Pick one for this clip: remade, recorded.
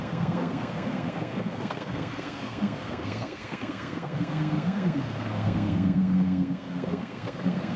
remade